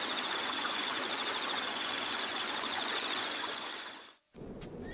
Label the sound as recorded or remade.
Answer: remade